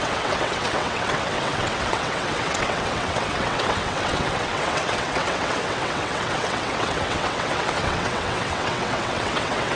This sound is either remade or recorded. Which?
remade